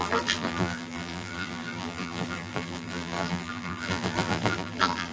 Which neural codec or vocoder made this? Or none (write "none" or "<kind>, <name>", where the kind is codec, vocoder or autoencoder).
vocoder, BigVGAN v2